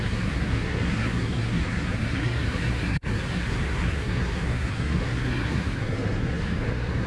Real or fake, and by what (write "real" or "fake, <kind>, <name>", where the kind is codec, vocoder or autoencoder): fake, codec, SNAC